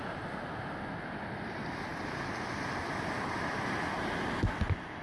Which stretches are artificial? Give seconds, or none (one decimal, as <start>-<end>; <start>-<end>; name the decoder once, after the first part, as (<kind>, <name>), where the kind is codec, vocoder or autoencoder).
none